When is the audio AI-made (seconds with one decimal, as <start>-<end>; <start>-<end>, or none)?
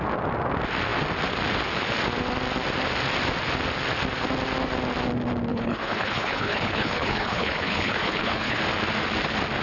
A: 5.5-8.6